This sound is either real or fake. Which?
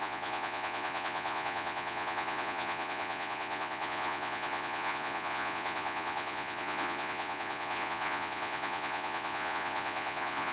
fake